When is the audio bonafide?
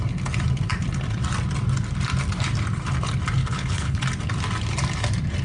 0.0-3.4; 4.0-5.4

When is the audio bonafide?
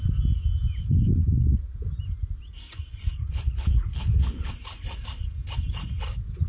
0.0-3.2; 4.5-6.5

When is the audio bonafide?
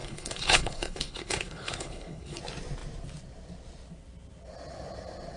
2.4-5.4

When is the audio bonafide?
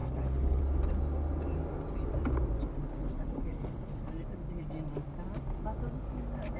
0.6-2.9; 4.1-6.6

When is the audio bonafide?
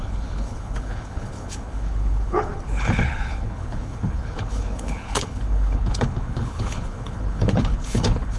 none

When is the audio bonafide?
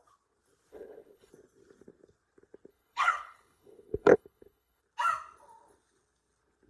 0.0-0.7; 1.3-2.7; 4.8-6.7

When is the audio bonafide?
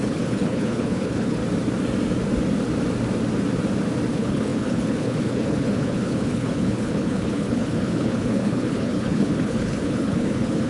1.4-4.1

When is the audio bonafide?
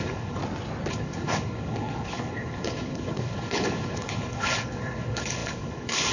0.4-0.9